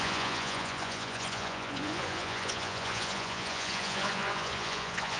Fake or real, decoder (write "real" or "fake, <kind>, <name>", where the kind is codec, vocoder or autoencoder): fake, vocoder, Vocos